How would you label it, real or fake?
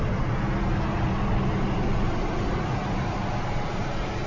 real